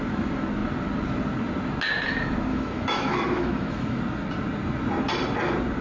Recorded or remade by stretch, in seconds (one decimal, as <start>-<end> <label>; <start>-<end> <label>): 0.0-2.5 recorded; 2.5-4.0 remade; 4.0-5.8 recorded